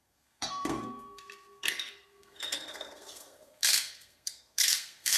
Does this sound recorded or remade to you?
remade